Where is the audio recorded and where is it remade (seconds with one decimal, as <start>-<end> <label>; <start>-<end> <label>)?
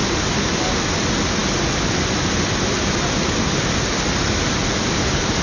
0.0-5.4 recorded